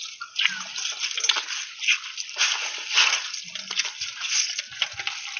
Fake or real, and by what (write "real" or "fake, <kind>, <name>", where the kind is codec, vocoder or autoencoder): real